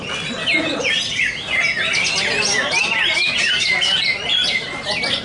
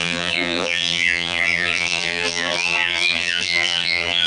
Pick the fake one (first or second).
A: second